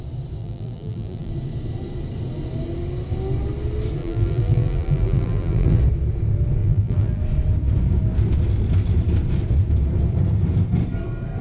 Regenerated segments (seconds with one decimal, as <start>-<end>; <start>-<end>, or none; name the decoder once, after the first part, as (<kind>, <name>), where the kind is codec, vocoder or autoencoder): 0.4-1.3 (vocoder, BigVGAN v2); 4.0-5.8; 6.6-7.2